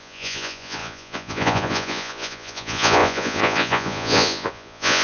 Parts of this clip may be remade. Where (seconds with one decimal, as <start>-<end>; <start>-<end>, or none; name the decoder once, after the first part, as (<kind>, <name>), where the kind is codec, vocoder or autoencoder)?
0.0-5.0 (vocoder, Vocos)